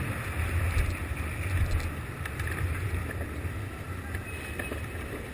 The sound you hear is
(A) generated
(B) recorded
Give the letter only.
B